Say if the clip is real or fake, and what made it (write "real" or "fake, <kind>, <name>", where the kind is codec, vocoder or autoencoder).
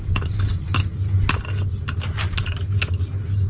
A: real